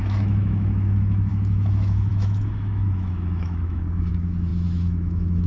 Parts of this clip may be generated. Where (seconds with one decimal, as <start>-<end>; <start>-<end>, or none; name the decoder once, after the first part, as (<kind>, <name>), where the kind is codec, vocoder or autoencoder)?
0.0-5.5 (autoencoder, DAC-VAE)